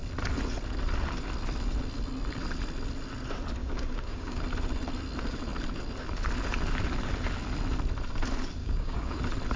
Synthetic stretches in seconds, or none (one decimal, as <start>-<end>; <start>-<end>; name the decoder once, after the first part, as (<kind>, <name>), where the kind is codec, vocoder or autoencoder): 3.6-4.4 (codec, DAC); 8.6-9.2